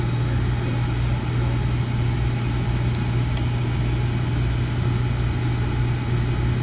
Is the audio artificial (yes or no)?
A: no